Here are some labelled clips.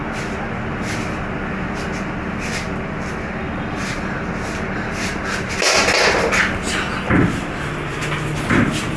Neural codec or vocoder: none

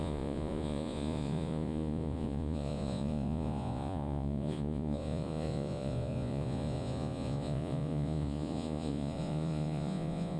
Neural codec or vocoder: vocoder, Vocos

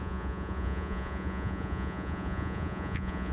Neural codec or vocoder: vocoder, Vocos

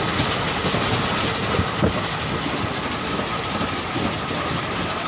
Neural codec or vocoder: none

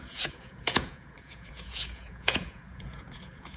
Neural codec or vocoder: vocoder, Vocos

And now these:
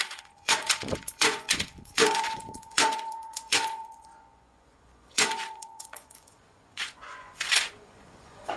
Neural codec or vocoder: vocoder, Vocos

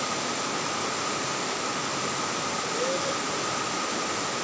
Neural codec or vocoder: none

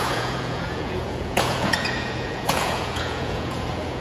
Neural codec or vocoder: vocoder, Vocos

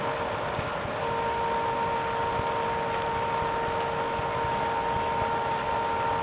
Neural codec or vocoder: none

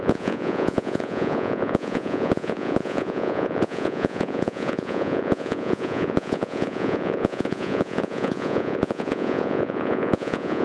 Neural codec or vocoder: vocoder, Vocos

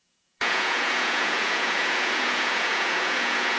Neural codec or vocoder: vocoder, Vocos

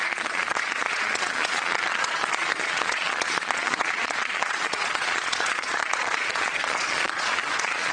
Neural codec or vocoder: vocoder, Vocos